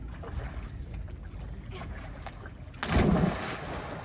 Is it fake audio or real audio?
real